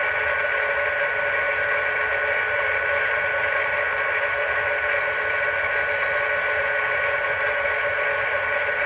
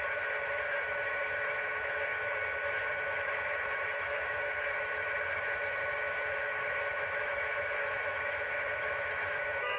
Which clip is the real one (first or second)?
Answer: first